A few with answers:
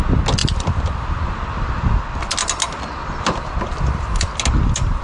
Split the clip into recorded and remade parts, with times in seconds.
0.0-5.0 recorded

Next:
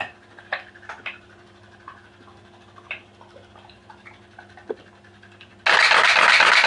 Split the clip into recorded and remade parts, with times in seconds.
0.0-5.5 remade; 5.5-6.7 recorded

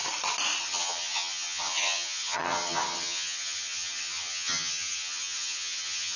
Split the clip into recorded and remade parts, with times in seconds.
0.0-0.6 recorded; 0.6-6.2 remade